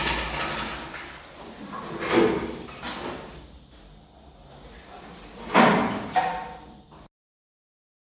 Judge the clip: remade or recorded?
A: recorded